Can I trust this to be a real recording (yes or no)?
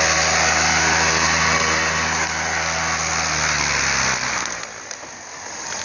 yes